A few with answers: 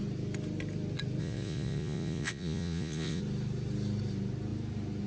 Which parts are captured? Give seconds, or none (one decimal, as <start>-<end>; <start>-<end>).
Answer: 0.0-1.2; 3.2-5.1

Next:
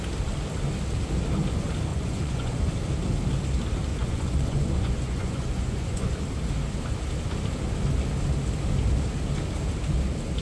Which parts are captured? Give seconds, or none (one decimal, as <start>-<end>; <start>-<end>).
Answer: 0.0-1.9; 2.7-3.9; 6.1-10.4

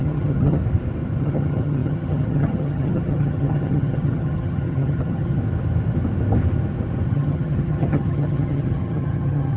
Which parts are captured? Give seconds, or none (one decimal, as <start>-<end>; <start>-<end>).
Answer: 0.6-1.2; 5.4-7.1